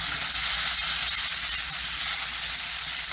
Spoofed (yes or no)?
no